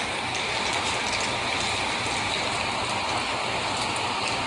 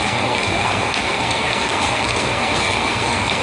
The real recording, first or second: first